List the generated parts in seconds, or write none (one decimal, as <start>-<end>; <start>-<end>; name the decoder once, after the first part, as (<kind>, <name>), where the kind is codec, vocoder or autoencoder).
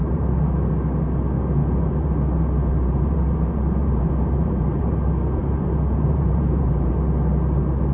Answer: 0.0-0.7 (vocoder, BigVGAN v2); 1.6-2.1; 2.7-4.8; 5.4-6.9